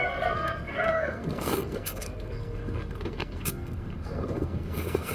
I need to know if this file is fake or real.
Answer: fake